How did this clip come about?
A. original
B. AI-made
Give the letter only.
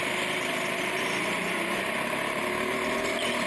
A